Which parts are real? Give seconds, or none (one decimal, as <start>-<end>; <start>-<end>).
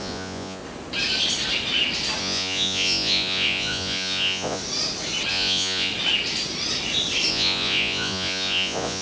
0.6-2.2; 4.6-5.3; 5.9-7.3